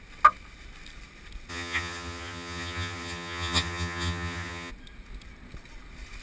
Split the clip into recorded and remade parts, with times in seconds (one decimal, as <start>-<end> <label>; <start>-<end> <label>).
0.0-1.5 recorded; 1.5-4.7 remade; 4.7-6.2 recorded

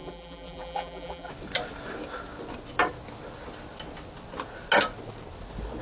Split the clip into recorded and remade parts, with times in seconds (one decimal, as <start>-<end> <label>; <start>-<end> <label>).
0.0-1.3 remade; 1.3-5.8 recorded

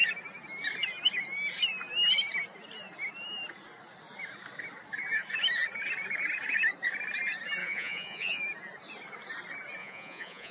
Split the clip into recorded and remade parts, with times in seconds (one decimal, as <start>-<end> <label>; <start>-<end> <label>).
0.0-7.6 recorded; 7.6-8.4 remade; 8.4-9.8 recorded; 9.8-10.5 remade